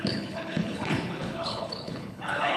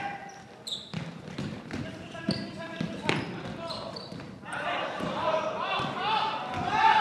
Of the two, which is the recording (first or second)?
second